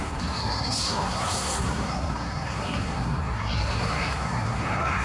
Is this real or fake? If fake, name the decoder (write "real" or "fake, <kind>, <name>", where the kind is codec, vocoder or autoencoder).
fake, codec, SNAC